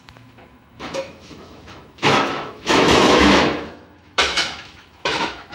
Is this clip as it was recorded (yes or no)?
no